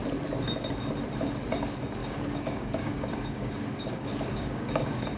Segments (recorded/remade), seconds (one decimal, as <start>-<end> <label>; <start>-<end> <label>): 0.0-2.0 recorded; 2.0-5.2 remade